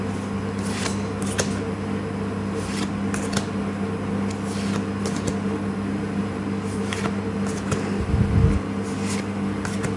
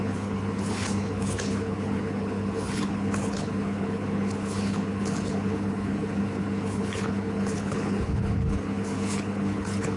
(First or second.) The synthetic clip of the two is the second